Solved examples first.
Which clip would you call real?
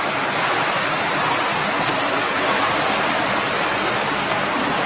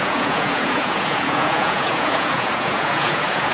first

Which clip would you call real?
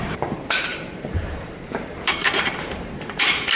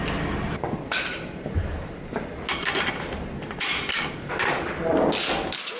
second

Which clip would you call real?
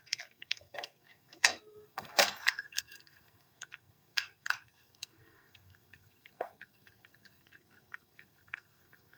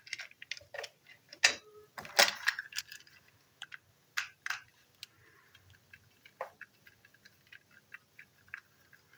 second